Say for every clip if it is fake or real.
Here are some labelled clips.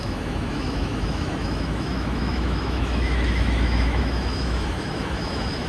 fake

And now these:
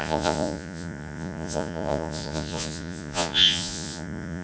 fake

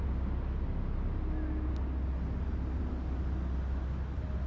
real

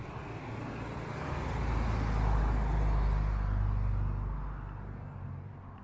real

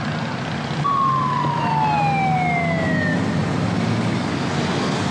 real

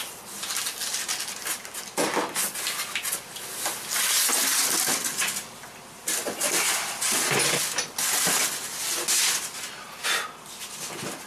real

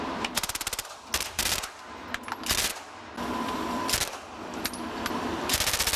real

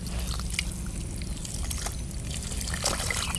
real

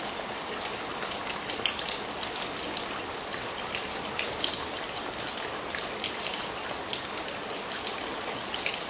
real